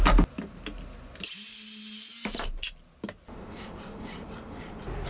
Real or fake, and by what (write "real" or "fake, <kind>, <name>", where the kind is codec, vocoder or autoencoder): real